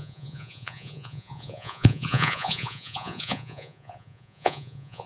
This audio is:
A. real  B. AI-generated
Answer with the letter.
B